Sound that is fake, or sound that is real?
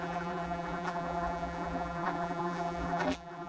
fake